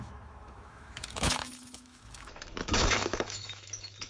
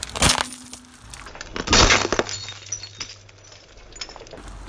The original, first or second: second